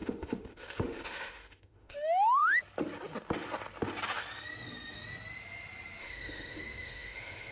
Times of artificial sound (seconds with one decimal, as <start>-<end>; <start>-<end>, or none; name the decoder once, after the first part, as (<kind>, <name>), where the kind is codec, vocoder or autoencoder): 0.0-2.4 (autoencoder, DAC-VAE); 6.0-7.5